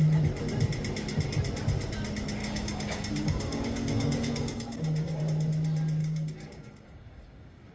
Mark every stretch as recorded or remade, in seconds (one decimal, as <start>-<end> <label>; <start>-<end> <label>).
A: 0.0-2.4 recorded; 2.4-5.2 remade; 5.2-6.0 recorded; 6.0-7.7 remade